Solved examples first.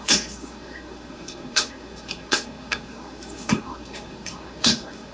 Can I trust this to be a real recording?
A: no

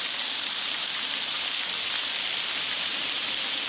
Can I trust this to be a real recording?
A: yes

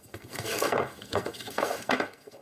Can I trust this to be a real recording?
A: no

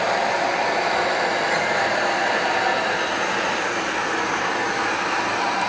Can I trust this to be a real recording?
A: yes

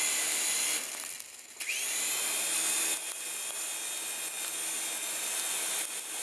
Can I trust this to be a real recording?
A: yes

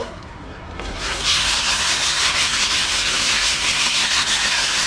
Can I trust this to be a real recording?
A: no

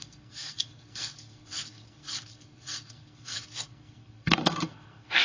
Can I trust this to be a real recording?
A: no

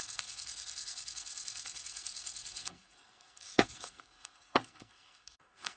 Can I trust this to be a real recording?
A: no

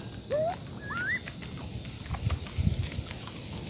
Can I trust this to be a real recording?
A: yes